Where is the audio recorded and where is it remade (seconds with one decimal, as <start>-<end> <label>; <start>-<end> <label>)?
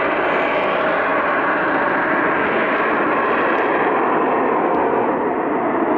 0.0-4.6 recorded; 4.6-5.1 remade; 5.1-6.0 recorded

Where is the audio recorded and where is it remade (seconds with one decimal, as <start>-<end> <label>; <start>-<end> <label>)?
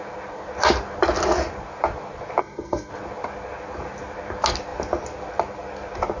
0.0-2.4 recorded; 2.4-2.9 remade; 2.9-6.2 recorded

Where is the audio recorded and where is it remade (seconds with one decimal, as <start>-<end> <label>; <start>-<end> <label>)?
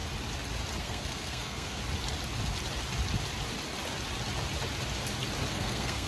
0.0-0.8 recorded; 0.8-1.8 remade; 1.8-5.5 recorded; 5.5-6.1 remade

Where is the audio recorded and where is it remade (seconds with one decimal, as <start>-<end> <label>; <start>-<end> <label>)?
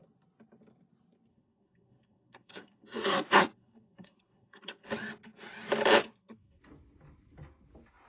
0.0-1.3 recorded; 1.3-4.9 remade; 4.9-6.0 recorded; 6.0-6.6 remade; 6.6-8.1 recorded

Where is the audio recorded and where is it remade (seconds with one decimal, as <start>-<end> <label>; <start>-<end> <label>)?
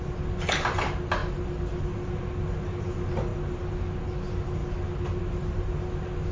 0.0-6.3 recorded